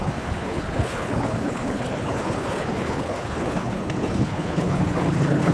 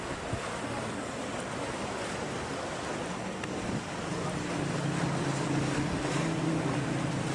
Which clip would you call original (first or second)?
second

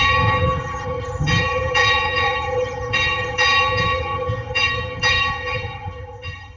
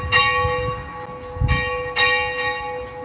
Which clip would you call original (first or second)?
second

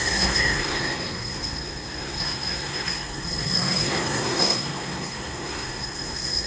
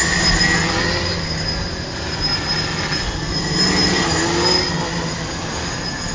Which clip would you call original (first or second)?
second